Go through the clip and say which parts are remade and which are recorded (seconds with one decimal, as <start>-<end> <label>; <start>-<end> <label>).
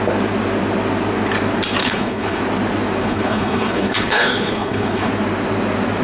0.0-1.8 recorded; 1.8-2.4 remade; 2.4-3.0 recorded; 3.0-5.1 remade; 5.1-6.0 recorded